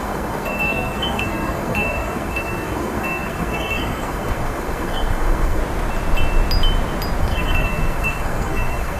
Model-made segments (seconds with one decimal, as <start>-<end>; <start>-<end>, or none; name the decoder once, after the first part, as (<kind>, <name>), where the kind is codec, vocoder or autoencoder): 0.0-5.6 (codec, SNAC); 7.2-9.0